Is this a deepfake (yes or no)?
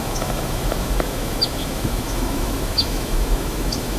yes